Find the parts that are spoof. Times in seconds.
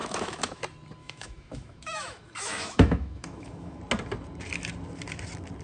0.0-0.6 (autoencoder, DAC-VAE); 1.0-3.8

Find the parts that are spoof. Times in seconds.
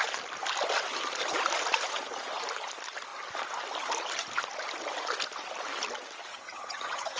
6.3-7.2 (vocoder, HiFi-GAN)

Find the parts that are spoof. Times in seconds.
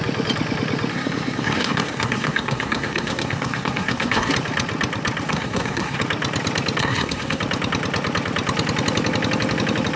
0.9-4.3 (codec, SNAC); 5.3-6.0; 6.8-7.4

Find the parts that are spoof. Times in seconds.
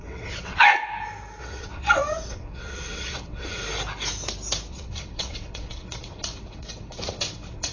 0.0-0.7 (vocoder, WaveNeXt); 1.4-3.6; 4.7-7.7